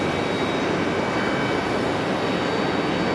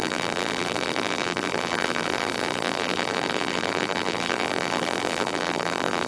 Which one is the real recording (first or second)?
first